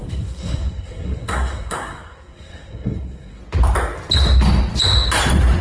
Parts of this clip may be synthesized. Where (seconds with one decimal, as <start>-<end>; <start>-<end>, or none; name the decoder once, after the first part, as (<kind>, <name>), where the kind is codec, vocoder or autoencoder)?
0.0-3.4 (codec, SNAC)